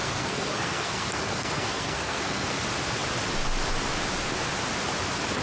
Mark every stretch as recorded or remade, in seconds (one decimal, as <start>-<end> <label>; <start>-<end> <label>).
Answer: 0.0-2.6 remade; 2.6-5.4 recorded